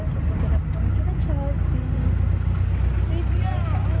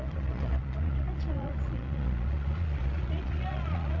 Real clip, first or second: first